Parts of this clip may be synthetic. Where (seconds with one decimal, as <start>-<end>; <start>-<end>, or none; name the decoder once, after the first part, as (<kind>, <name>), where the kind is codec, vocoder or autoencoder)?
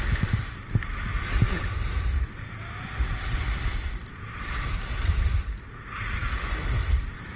none